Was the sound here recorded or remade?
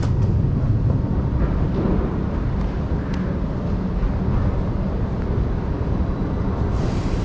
recorded